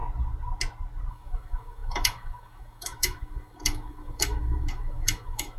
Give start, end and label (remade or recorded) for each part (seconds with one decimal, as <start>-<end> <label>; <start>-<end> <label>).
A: 0.0-1.1 recorded; 1.1-5.6 remade